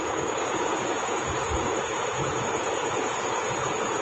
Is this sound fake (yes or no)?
yes